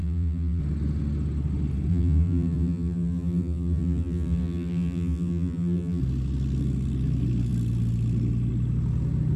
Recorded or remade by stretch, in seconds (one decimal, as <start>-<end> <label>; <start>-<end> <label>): 0.0-0.6 remade; 0.6-1.9 recorded; 1.9-6.0 remade; 6.0-9.4 recorded